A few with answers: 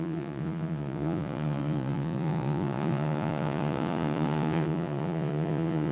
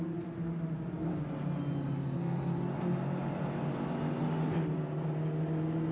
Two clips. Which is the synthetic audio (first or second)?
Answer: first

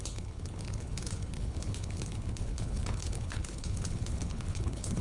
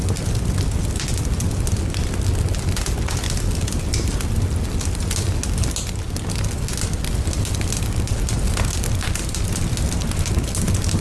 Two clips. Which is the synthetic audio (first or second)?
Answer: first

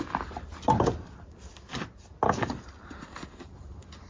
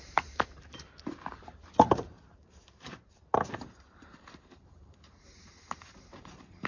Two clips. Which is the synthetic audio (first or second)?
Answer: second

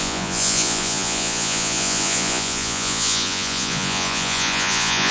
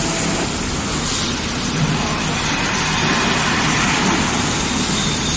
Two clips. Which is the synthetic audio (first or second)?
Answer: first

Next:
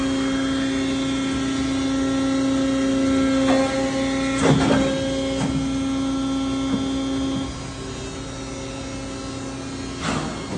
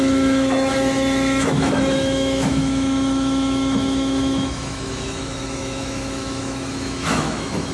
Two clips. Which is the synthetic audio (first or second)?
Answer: second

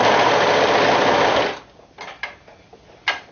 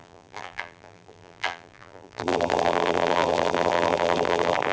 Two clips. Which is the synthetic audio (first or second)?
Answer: second